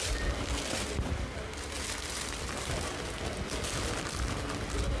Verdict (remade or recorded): recorded